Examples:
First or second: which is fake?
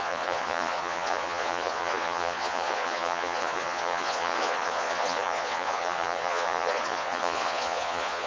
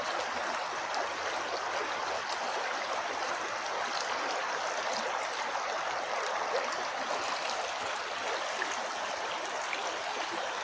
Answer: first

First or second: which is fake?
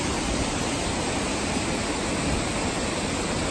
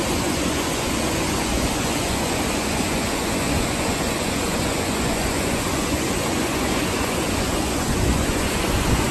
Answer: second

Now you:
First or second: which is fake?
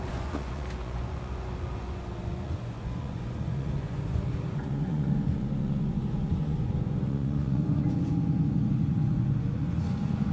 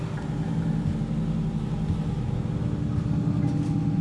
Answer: first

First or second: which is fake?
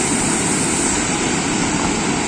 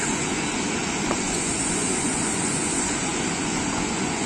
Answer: second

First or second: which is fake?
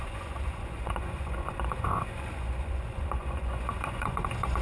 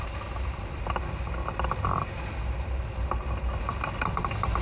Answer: first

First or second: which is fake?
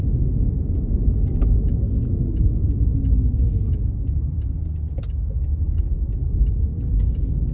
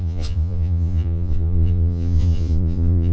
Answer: second